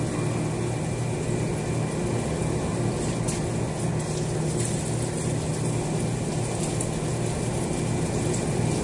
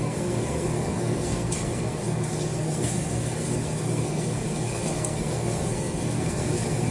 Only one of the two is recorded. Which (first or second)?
first